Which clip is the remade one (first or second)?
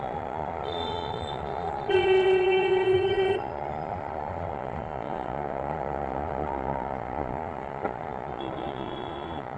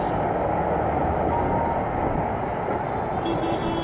first